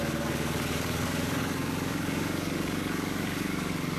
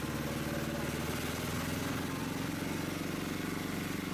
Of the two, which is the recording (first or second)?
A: second